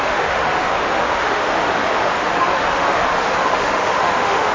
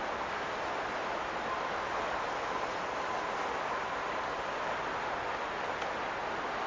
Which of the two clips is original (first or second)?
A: second